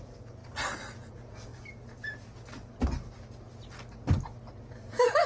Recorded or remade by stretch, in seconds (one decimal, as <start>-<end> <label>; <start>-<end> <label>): 0.0-0.4 remade; 0.4-1.1 recorded; 1.1-1.5 remade; 1.5-4.7 recorded; 4.7-5.3 remade